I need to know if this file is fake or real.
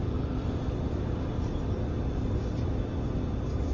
real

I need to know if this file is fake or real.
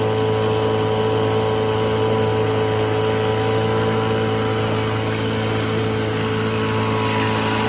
real